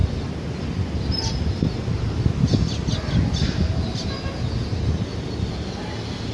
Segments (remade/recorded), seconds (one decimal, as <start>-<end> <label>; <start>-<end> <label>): 0.0-6.3 recorded